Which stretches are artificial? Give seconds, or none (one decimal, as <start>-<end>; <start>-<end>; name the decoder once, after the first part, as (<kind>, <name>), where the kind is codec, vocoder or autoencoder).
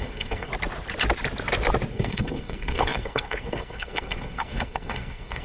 0.0-0.5 (codec, SNAC); 1.9-5.4